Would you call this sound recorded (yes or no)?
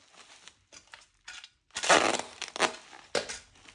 yes